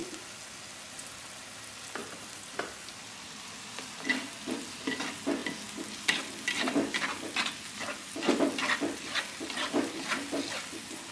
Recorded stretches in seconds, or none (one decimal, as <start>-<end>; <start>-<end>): 0.0-11.1